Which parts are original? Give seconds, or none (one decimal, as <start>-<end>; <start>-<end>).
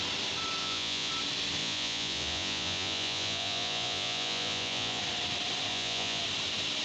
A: 0.0-0.6; 1.1-1.6; 5.0-5.7; 6.2-6.8